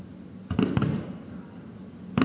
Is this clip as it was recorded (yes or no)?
yes